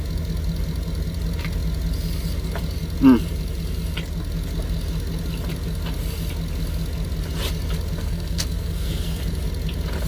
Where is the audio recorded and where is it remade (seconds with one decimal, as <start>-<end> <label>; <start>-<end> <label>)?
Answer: 0.0-8.0 recorded; 8.0-9.2 remade; 9.2-10.1 recorded